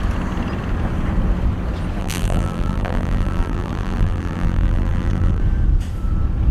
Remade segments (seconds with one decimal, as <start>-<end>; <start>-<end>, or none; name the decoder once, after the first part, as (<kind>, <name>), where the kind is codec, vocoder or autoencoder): 2.0-5.4 (vocoder, BigVGAN v2)